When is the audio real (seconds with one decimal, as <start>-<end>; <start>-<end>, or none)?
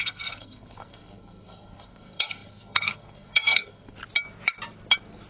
4.0-5.3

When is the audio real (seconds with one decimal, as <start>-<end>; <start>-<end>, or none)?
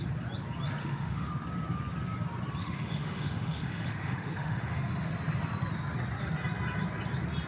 0.0-0.8; 1.3-2.6; 5.1-7.5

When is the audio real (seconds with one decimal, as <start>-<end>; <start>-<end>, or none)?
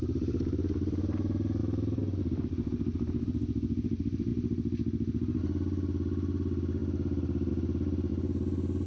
4.3-5.4; 8.1-8.9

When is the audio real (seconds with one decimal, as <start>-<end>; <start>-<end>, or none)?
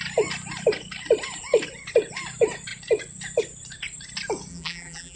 0.0-4.5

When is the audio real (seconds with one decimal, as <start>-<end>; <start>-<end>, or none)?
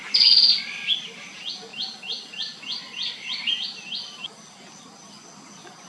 0.0-1.7; 5.1-5.9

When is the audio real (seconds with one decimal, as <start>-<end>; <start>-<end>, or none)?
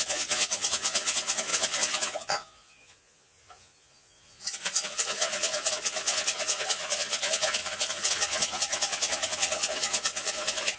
none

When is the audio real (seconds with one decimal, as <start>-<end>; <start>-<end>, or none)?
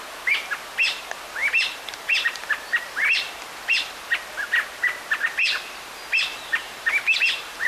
0.0-1.4; 3.0-6.3